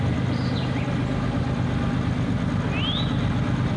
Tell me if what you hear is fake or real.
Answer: real